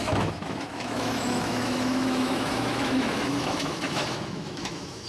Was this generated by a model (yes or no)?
yes